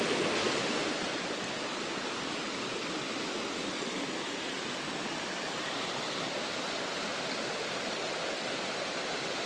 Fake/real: real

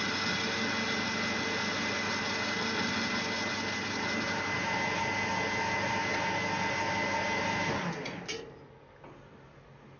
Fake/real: real